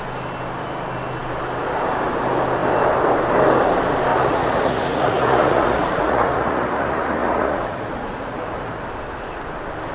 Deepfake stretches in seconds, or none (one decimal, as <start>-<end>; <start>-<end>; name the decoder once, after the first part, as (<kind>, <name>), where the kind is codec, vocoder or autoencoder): 4.1-8.7 (vocoder, Vocos)